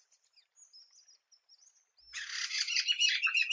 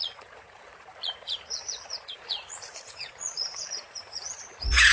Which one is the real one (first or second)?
first